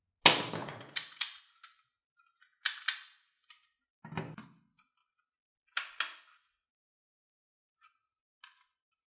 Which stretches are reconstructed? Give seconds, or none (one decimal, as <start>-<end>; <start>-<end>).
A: 0.6-1.4